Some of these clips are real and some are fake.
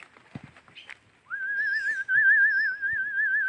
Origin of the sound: real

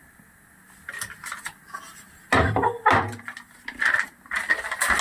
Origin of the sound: real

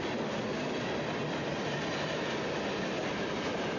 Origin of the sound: real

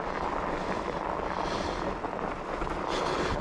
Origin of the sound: real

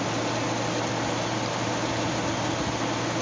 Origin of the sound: real